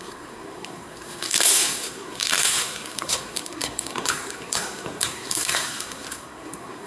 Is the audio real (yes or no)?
no